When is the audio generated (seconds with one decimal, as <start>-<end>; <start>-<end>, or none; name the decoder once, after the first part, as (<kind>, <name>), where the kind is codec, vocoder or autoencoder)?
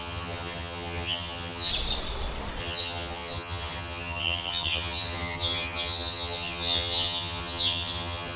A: 0.0-1.7 (vocoder, HiFi-GAN); 2.6-8.4